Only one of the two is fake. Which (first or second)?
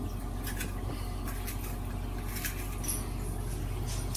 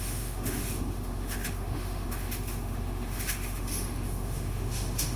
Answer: second